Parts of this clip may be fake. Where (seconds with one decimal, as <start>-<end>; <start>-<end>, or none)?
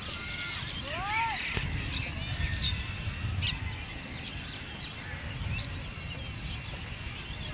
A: none